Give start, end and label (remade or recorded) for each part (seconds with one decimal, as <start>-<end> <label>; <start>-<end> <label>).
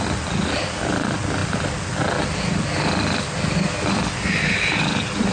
0.0-5.3 recorded